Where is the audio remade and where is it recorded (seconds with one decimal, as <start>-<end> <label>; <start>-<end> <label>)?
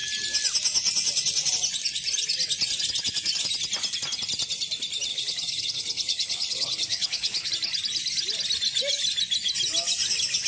0.0-5.1 recorded; 5.1-7.5 remade; 7.5-10.5 recorded